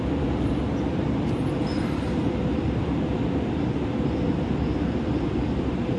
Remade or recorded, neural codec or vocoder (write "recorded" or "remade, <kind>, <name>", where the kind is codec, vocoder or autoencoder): remade, vocoder, BigVGAN v2